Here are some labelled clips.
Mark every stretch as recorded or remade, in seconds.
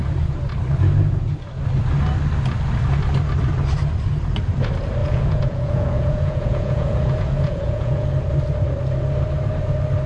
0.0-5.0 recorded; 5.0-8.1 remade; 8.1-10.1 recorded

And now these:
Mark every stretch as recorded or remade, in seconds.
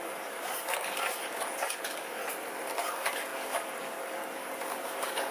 0.0-2.2 remade; 2.2-2.8 recorded; 2.8-5.3 remade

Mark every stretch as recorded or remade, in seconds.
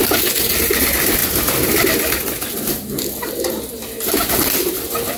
0.0-5.2 recorded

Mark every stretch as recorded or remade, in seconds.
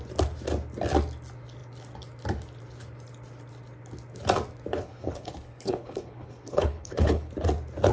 0.0-4.7 recorded; 4.7-7.3 remade; 7.3-7.9 recorded